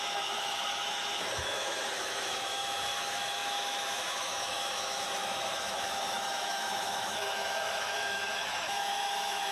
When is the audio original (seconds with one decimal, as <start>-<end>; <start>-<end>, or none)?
none